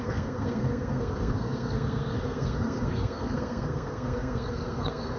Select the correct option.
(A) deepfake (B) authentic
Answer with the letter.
A